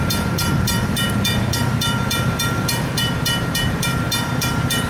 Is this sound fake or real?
fake